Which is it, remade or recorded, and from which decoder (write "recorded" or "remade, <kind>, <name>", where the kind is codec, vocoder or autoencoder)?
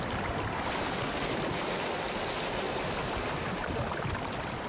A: recorded